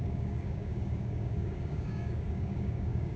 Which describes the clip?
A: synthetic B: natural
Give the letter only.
A